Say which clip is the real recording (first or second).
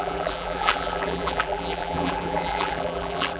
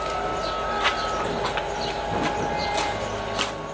second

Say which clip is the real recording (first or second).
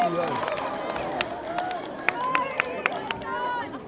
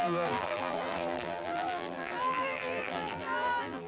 first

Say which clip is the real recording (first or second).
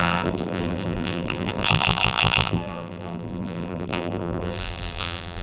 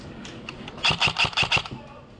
second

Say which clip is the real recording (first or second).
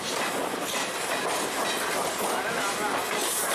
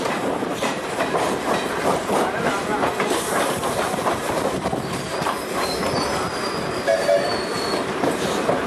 first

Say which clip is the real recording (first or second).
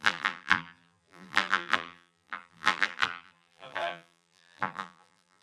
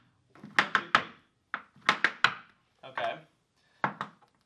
second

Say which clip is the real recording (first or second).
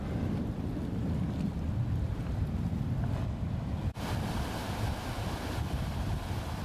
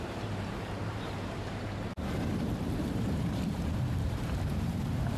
first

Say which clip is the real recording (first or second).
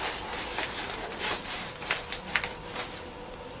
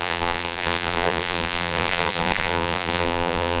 first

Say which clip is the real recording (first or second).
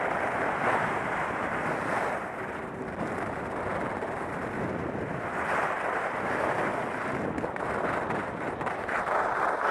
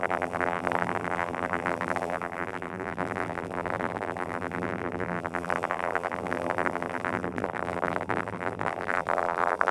first